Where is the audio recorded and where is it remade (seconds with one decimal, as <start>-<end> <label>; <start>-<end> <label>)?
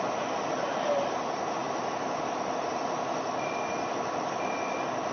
0.0-5.1 recorded